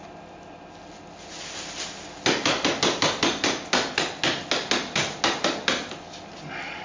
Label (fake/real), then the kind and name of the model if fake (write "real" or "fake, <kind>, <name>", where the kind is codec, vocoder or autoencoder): real